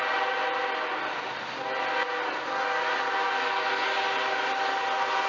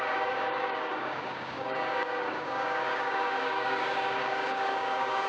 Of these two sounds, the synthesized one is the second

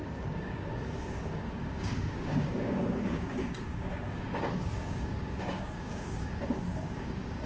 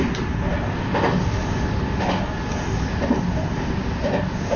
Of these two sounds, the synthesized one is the first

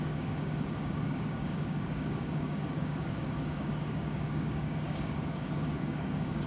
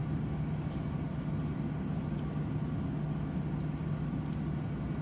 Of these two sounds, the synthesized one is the first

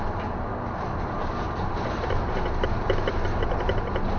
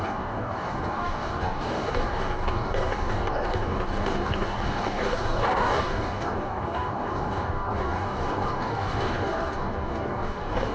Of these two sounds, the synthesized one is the second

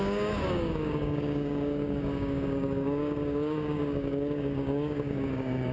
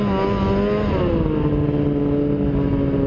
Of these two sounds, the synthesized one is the first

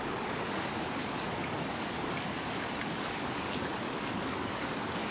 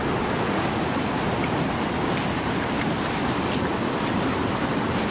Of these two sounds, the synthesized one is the first